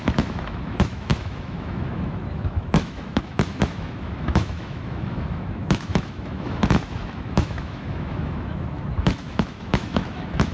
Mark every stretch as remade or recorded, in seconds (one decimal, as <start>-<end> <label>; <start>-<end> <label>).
0.0-10.5 remade

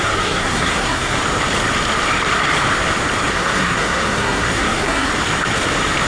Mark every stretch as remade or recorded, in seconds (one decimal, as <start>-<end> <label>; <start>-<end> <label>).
0.0-1.2 remade; 1.2-3.3 recorded; 3.3-5.1 remade; 5.1-6.1 recorded

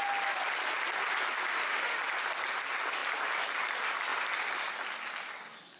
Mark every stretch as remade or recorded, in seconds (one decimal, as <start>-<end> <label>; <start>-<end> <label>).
0.0-1.5 recorded; 1.5-2.0 remade; 2.0-5.8 recorded

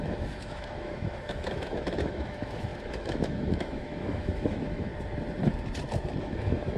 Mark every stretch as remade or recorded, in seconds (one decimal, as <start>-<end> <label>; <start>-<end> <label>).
0.0-4.9 remade; 4.9-6.2 recorded; 6.2-6.8 remade

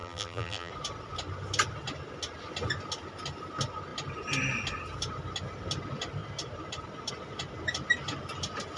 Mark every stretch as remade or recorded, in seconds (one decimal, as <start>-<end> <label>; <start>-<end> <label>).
0.0-0.7 remade; 0.7-8.8 recorded

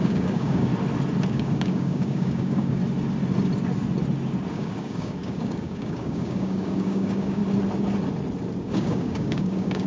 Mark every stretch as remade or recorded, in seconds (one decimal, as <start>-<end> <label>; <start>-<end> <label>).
0.0-0.7 remade; 0.7-1.3 recorded; 1.3-2.8 remade; 2.8-4.5 recorded; 4.5-7.4 remade; 7.4-8.6 recorded; 8.6-9.9 remade

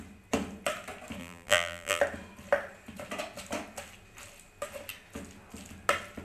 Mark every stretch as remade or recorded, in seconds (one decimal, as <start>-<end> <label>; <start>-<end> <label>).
0.0-1.2 recorded; 1.2-2.0 remade; 2.0-6.2 recorded

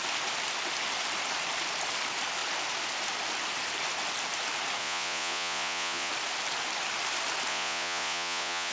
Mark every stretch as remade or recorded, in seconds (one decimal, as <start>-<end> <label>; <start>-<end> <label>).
0.0-4.8 recorded; 4.8-6.1 remade; 6.1-7.5 recorded; 7.5-8.7 remade